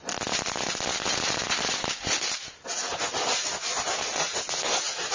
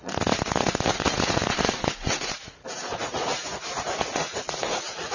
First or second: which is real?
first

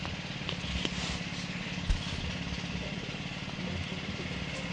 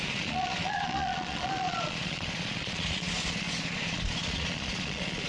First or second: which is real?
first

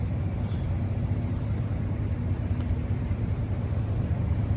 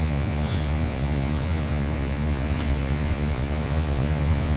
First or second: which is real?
first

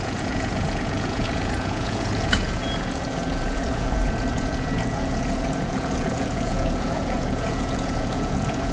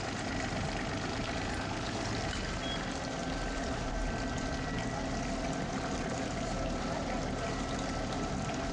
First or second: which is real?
second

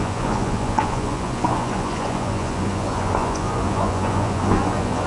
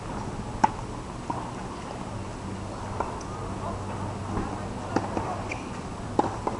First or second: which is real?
second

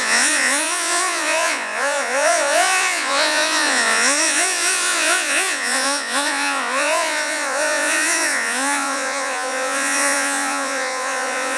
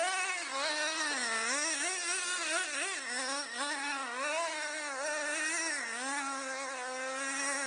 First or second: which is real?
second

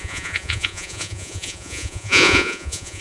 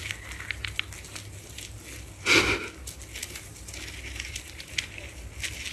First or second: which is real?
second